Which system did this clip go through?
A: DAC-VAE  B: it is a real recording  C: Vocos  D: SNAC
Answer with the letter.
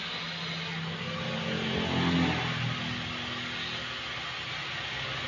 B